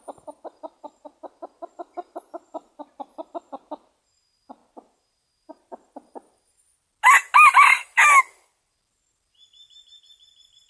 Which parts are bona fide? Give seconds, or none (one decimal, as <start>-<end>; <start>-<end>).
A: 0.0-10.7

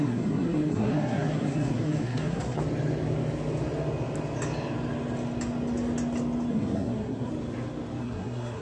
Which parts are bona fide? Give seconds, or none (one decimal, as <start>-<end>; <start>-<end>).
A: 2.6-6.5; 7.3-8.0

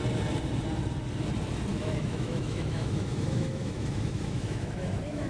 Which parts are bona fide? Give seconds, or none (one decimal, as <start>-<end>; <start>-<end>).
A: 0.0-1.7

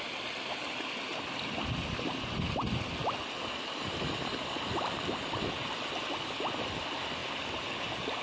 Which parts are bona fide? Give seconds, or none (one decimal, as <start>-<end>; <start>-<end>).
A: 0.0-8.2

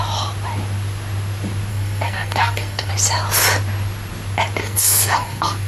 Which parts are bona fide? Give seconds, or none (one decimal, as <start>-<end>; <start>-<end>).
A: 0.0-1.7; 2.9-4.6

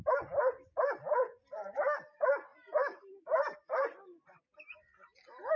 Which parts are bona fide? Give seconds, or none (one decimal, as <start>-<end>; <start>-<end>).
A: 0.0-5.6

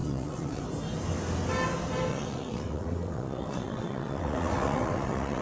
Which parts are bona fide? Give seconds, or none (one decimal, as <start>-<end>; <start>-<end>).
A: 0.6-2.1